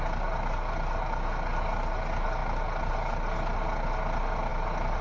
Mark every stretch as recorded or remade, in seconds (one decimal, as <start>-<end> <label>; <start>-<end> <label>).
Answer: 0.0-5.0 recorded